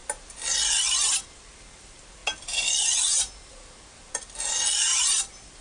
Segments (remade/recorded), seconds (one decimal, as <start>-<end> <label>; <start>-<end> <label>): 0.0-4.9 recorded; 4.9-5.6 remade